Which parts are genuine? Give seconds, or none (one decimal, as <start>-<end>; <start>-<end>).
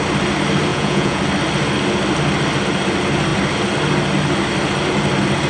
0.0-0.7; 1.2-5.5